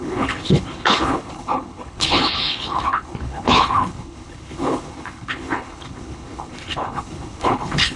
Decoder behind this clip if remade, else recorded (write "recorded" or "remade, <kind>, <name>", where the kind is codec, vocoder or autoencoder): remade, codec, HILCodec